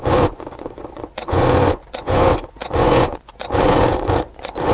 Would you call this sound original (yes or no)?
no